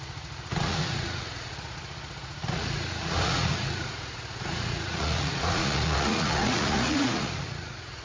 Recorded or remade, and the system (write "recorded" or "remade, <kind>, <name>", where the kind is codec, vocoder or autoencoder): remade, vocoder, Vocos